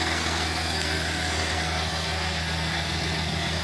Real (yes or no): no